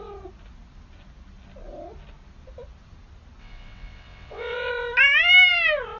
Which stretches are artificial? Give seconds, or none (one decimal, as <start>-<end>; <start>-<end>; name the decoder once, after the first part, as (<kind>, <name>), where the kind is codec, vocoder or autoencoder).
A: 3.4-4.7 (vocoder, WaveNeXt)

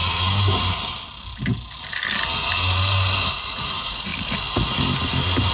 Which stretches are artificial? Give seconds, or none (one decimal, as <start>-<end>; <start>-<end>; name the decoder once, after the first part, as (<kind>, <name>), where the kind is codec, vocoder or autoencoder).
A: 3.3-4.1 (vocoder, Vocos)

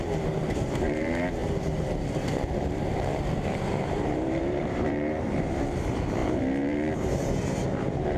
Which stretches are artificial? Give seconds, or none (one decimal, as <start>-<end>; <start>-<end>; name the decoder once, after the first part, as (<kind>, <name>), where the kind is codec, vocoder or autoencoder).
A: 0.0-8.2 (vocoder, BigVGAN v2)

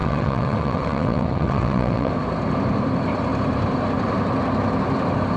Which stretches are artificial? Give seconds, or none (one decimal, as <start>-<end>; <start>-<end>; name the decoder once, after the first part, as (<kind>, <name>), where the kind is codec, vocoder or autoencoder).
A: 0.0-2.1 (vocoder, WaveNeXt)